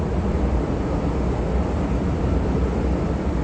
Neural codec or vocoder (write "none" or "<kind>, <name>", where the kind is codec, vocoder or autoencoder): none